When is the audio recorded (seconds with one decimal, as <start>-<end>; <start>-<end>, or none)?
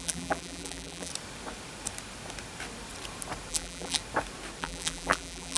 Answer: 1.1-3.5; 4.0-4.6